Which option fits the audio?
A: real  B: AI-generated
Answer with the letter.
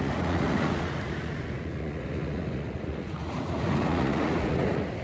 B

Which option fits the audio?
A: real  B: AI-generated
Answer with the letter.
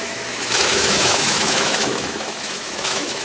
B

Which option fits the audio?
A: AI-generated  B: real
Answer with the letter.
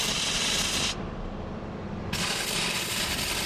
B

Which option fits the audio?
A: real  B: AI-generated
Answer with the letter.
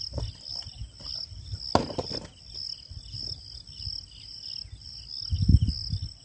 A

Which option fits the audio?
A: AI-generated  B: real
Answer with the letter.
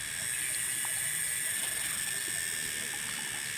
B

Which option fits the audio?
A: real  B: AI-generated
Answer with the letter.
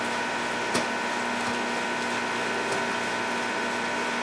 A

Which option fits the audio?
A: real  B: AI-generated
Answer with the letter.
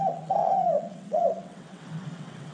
B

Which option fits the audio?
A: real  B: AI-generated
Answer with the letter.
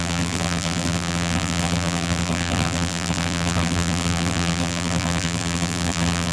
B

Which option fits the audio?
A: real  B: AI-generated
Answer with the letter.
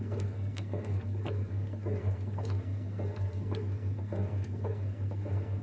B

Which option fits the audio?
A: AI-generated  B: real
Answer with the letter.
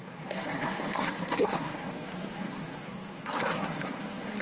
A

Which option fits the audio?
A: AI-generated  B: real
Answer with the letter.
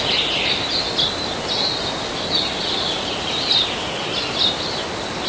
B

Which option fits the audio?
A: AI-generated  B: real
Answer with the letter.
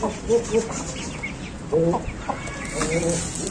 B